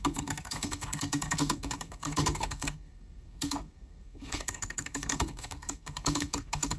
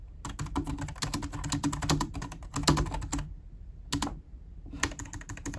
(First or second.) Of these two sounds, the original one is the second